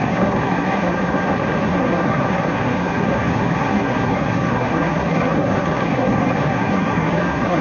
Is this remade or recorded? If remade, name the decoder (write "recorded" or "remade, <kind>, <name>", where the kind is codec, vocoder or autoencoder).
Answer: remade, codec, SNAC